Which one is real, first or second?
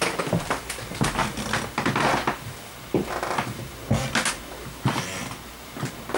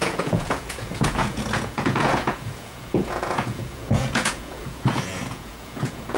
first